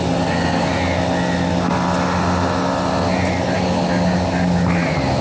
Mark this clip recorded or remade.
recorded